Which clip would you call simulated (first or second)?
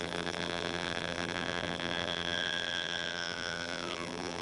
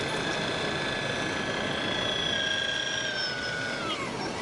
first